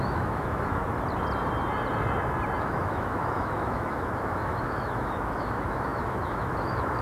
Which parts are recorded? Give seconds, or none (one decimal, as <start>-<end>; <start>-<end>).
0.8-2.6